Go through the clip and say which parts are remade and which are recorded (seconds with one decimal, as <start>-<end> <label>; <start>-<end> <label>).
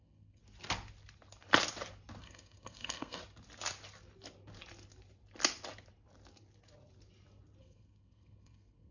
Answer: 0.0-0.4 remade; 0.4-2.2 recorded; 2.2-3.2 remade; 3.2-7.6 recorded; 7.6-8.9 remade